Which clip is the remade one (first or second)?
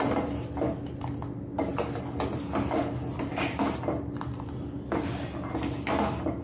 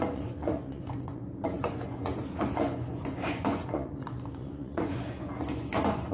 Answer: second